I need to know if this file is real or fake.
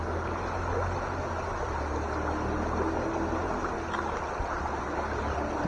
real